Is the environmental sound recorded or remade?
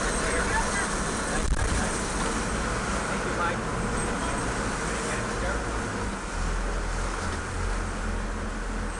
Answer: recorded